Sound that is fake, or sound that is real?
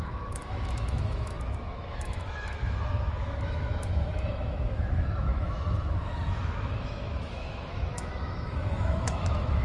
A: fake